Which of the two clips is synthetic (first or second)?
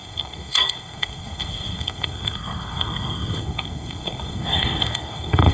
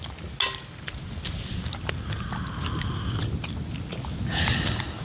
first